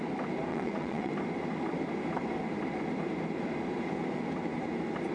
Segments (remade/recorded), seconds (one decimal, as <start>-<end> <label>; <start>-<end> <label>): 0.0-0.5 recorded; 0.5-1.1 remade; 1.1-5.1 recorded